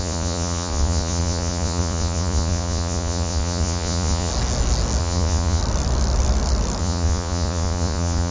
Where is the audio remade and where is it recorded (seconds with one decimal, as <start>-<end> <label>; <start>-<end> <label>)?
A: 0.0-4.3 remade; 4.3-5.0 recorded; 5.0-5.6 remade; 5.6-6.8 recorded; 6.8-8.3 remade